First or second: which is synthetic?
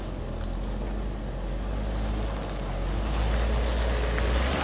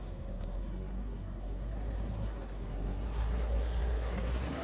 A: second